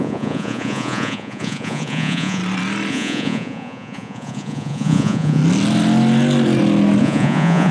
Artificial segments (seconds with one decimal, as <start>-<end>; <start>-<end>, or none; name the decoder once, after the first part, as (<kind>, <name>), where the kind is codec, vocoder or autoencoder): 0.0-2.4 (vocoder, Vocos); 2.9-5.4; 7.0-7.7